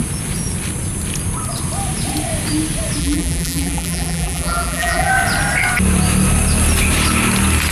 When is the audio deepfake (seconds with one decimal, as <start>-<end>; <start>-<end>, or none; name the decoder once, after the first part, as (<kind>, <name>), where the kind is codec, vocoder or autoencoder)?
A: 3.0-5.1 (vocoder, BigVGAN v2)